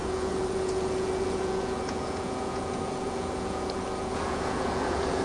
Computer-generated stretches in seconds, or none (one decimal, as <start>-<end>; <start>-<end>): 0.0-5.2